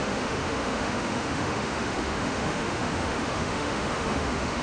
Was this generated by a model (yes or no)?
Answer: yes